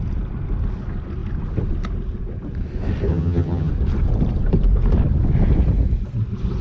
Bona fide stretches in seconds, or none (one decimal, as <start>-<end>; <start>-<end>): 0.0-3.1; 3.7-6.6